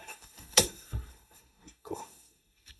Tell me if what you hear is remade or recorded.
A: remade